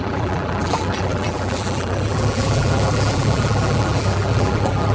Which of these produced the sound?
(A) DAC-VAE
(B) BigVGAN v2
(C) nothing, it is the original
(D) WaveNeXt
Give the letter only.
B